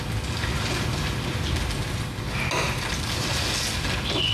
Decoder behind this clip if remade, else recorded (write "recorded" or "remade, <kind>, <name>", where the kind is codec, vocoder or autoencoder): recorded